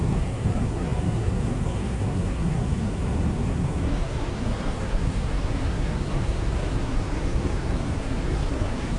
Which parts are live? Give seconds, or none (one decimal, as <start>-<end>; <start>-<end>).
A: none